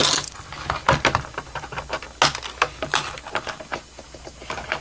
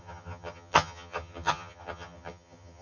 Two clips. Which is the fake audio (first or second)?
second